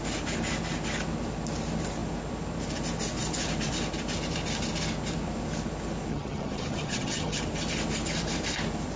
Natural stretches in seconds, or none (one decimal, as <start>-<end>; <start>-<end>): 0.0-6.1; 7.4-9.0